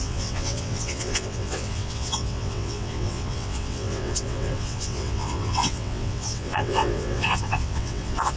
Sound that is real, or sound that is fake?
fake